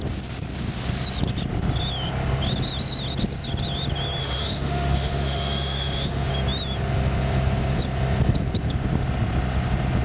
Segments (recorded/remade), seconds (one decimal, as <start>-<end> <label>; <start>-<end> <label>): 0.0-4.2 recorded; 4.2-6.3 remade; 6.3-10.0 recorded